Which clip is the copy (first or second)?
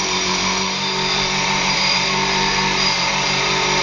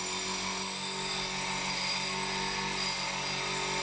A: first